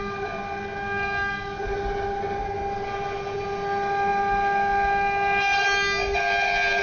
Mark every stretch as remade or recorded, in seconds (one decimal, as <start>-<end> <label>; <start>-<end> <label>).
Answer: 0.0-6.8 recorded

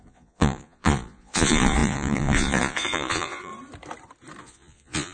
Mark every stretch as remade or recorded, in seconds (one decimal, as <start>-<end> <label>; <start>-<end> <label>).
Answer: 0.0-3.5 remade; 3.5-4.4 recorded; 4.4-5.1 remade

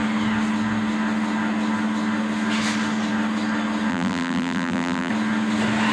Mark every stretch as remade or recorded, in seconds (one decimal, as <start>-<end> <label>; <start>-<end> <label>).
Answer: 0.0-3.9 recorded; 3.9-5.1 remade; 5.1-5.9 recorded

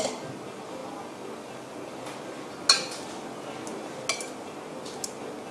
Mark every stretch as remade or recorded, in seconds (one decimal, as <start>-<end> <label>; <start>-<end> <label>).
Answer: 0.0-5.5 recorded

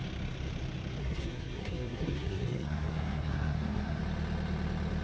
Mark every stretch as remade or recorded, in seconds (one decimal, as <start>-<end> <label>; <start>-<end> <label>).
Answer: 0.0-1.0 recorded; 1.0-4.0 remade; 4.0-5.0 recorded

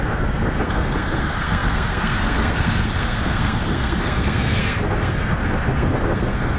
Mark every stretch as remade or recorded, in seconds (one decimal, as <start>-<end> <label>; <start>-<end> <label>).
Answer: 0.0-6.6 remade

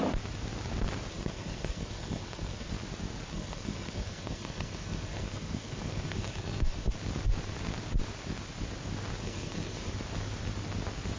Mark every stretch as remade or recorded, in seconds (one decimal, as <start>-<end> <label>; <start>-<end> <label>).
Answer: 0.0-1.1 recorded; 1.1-2.7 remade; 2.7-3.3 recorded; 3.3-6.9 remade; 6.9-9.2 recorded; 9.2-9.9 remade; 9.9-11.2 recorded

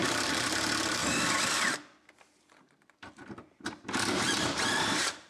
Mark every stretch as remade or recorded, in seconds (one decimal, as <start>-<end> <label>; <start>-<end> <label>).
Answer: 0.0-1.0 remade; 1.0-2.3 recorded; 2.3-5.3 remade